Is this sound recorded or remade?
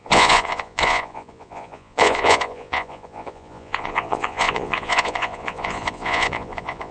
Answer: remade